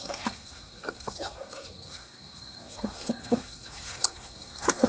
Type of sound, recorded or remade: remade